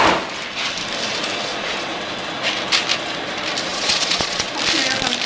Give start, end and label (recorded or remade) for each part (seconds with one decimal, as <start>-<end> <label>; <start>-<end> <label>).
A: 0.0-1.5 recorded; 1.5-2.0 remade; 2.0-3.7 recorded; 3.7-4.5 remade; 4.5-5.3 recorded